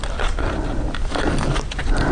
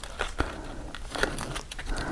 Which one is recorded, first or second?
second